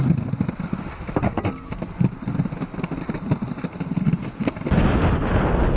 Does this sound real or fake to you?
real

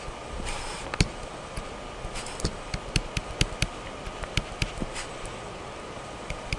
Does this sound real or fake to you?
real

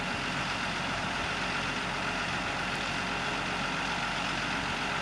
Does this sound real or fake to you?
real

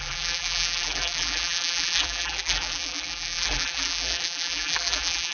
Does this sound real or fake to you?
fake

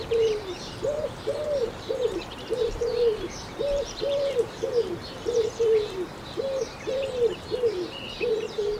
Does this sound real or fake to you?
fake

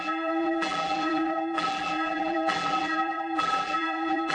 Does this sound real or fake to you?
fake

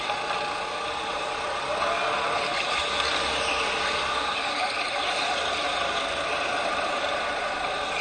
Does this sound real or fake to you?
real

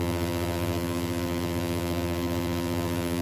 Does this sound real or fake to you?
fake